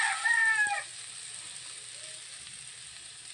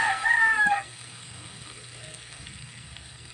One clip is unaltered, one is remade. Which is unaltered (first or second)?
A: first